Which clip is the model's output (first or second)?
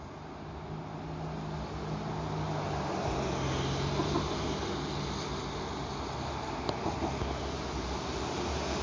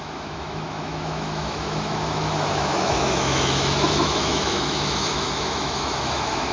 second